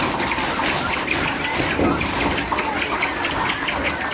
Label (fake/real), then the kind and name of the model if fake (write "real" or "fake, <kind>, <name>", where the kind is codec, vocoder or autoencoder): real